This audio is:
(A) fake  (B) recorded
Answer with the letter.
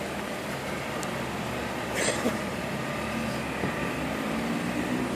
A